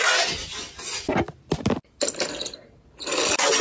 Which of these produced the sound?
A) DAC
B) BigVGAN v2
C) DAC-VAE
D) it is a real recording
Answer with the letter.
D